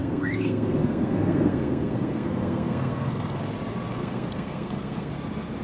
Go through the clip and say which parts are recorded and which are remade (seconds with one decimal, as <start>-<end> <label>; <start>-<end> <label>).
0.0-3.4 remade; 3.4-3.9 recorded; 3.9-5.1 remade; 5.1-5.6 recorded

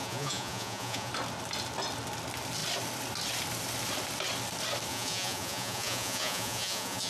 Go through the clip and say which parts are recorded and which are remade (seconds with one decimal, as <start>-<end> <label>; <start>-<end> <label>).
0.0-1.1 remade; 1.1-4.9 recorded; 4.9-7.1 remade

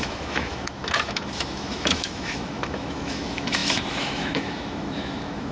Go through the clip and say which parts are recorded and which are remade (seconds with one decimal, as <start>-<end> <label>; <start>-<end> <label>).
0.0-5.5 remade

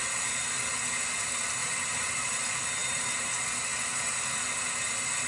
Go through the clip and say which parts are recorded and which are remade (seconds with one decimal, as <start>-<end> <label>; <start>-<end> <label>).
0.0-1.6 recorded; 1.6-2.4 remade; 2.4-2.8 recorded; 2.8-3.3 remade; 3.3-5.3 recorded

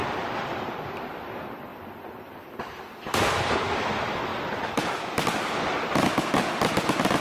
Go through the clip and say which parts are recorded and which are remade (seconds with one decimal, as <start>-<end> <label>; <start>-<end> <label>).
0.0-1.0 remade; 1.0-1.7 recorded; 1.7-3.5 remade; 3.5-4.3 recorded; 4.3-5.6 remade; 5.6-7.2 recorded